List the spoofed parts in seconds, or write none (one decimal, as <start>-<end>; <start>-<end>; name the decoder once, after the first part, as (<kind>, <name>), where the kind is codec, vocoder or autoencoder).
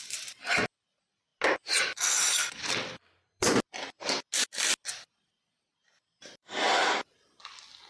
none